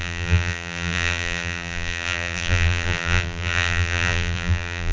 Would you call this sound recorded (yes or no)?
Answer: no